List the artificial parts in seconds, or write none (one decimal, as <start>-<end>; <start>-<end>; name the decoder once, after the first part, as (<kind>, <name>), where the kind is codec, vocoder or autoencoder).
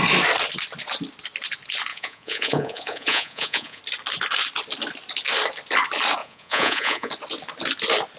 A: 1.9-3.8 (vocoder, Vocos); 6.2-7.1